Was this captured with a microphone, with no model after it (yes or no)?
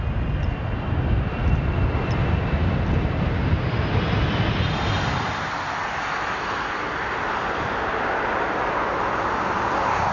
yes